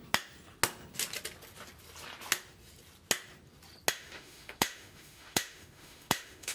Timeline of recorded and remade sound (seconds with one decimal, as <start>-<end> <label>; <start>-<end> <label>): 0.0-3.9 recorded; 3.9-6.5 remade